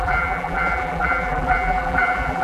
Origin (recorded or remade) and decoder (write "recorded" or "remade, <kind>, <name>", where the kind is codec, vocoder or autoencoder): remade, vocoder, BigVGAN v2